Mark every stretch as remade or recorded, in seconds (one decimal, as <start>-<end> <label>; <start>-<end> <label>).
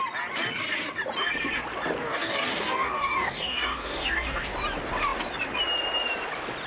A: 0.0-2.0 recorded; 2.0-4.5 remade; 4.5-6.7 recorded